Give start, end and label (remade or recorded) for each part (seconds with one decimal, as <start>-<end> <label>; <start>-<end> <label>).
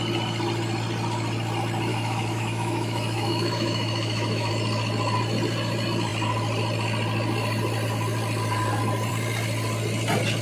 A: 0.0-1.9 recorded; 1.9-4.5 remade; 4.5-10.4 recorded